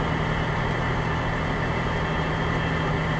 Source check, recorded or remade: recorded